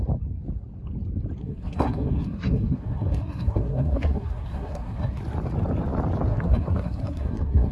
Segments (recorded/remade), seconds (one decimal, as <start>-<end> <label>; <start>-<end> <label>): 0.0-1.4 recorded; 1.4-5.2 remade; 5.2-6.3 recorded; 6.3-7.7 remade

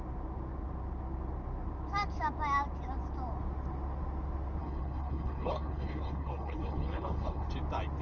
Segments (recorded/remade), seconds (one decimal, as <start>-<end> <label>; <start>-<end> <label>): 0.0-4.6 recorded; 4.6-7.5 remade; 7.5-8.0 recorded

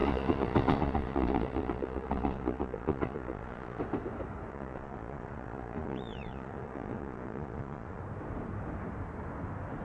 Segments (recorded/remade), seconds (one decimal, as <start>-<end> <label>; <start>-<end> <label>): 0.0-3.8 remade; 3.8-4.5 recorded; 4.5-8.0 remade; 8.0-9.8 recorded

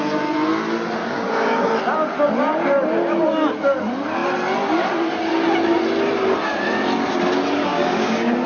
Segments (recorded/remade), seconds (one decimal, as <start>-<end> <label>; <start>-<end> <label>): 0.0-1.0 recorded; 1.0-1.7 remade; 1.7-7.7 recorded; 7.7-8.5 remade